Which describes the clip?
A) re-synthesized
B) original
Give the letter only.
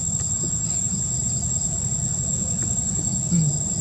B